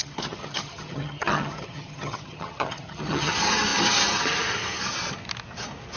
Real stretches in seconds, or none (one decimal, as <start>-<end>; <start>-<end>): 3.3-6.0